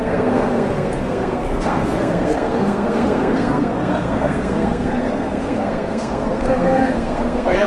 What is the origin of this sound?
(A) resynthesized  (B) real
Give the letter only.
A